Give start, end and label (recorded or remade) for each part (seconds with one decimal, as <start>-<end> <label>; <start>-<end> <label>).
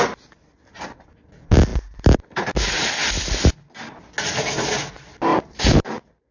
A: 0.0-5.3 recorded; 5.3-6.3 remade